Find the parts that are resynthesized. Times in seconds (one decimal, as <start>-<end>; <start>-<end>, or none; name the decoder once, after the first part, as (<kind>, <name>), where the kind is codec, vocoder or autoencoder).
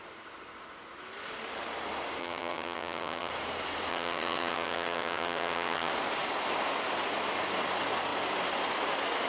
2.2-3.3 (vocoder, HiFi-GAN); 3.9-5.9